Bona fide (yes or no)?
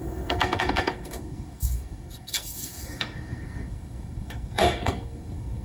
no